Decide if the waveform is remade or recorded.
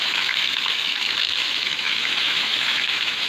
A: remade